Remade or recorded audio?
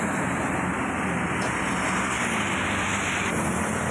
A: recorded